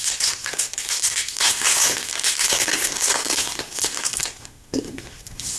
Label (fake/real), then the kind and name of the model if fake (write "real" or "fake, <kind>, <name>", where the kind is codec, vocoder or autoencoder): fake, codec, SNAC